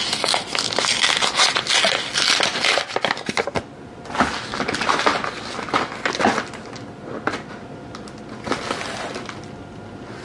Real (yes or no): yes